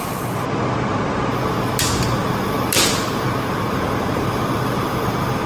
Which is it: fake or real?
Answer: real